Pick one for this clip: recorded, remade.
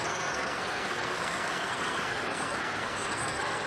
remade